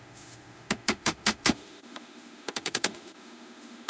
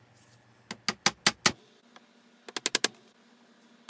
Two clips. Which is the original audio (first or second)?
second